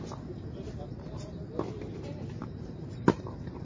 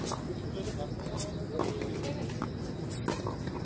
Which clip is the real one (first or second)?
second